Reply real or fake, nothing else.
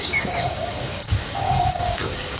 fake